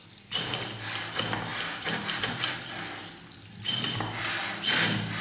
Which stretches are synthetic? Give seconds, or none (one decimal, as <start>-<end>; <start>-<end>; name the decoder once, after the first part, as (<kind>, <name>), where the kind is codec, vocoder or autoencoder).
none